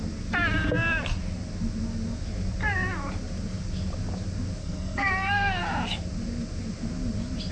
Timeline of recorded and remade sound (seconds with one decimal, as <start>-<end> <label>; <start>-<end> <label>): 0.0-4.6 recorded; 4.6-5.6 remade; 5.6-7.5 recorded